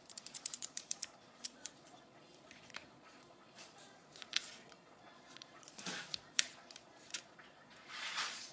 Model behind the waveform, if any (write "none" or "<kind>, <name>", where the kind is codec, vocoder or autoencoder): vocoder, Vocos